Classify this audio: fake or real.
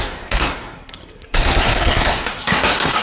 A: fake